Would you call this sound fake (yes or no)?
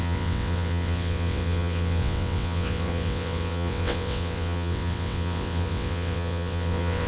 yes